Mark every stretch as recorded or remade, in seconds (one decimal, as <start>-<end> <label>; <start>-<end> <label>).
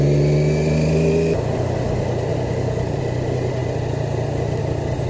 0.0-2.3 recorded; 2.3-3.0 remade; 3.0-5.1 recorded